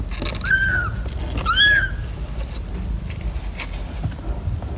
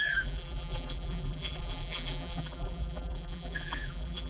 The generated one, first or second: second